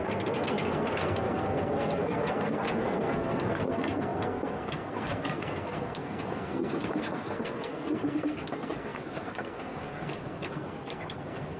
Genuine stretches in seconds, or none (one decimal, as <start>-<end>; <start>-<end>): none